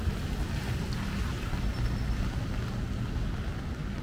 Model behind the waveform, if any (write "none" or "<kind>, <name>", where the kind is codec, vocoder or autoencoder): none